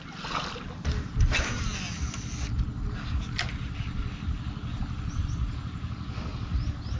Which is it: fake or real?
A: real